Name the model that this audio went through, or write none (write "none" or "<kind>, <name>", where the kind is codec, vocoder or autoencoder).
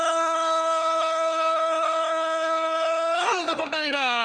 codec, SNAC